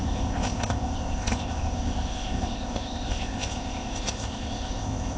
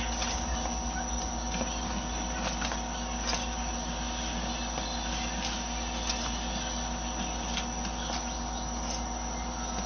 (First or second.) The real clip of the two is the second